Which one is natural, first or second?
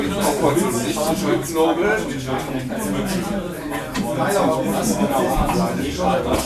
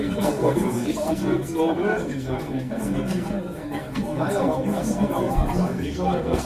first